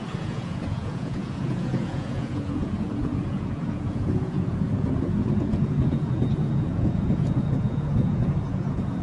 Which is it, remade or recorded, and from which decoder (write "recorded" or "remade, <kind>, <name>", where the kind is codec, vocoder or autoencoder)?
remade, vocoder, Vocos